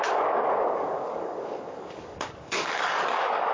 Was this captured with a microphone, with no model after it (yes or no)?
no